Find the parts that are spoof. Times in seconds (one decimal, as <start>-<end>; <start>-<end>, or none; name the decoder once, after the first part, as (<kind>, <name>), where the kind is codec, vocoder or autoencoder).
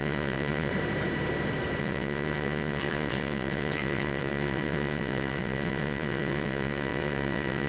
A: 0.0-0.7 (vocoder, WaveNeXt); 1.8-7.7